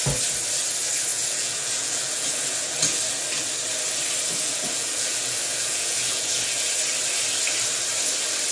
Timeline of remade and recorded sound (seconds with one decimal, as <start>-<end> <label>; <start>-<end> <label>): 0.0-1.1 recorded; 1.1-3.0 remade; 3.0-4.4 recorded; 4.4-6.8 remade; 6.8-8.5 recorded

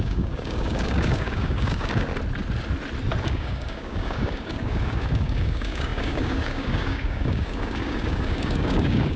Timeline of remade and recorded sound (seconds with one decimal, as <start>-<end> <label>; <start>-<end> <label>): 0.0-2.1 remade; 2.1-3.2 recorded; 3.2-9.2 remade

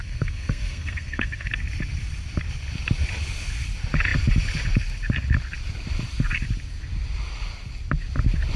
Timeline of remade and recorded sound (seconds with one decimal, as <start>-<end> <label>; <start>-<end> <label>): 0.0-1.5 remade; 1.5-8.6 recorded

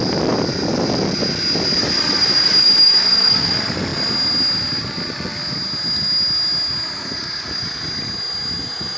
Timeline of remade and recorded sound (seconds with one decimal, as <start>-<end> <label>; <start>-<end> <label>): 0.0-1.8 recorded; 1.8-3.9 remade; 3.9-9.0 recorded

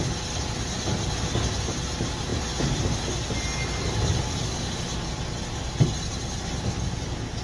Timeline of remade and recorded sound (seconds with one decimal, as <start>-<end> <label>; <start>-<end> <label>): 0.0-7.4 recorded